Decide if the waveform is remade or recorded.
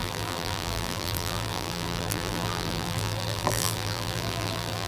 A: remade